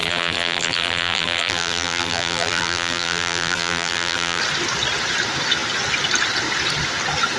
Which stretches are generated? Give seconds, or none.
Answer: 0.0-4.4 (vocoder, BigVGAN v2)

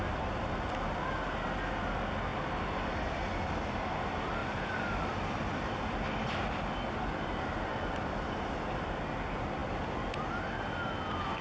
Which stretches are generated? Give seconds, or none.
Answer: 4.4-9.0 (vocoder, BigVGAN v2)

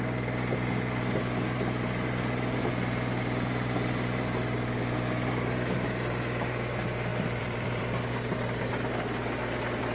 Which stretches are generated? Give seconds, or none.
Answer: 7.1-7.8 (vocoder, BigVGAN v2)

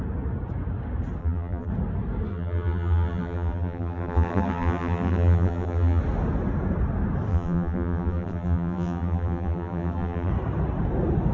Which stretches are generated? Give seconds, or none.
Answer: 1.2-1.7 (vocoder, BigVGAN v2); 2.3-6.0; 7.3-10.3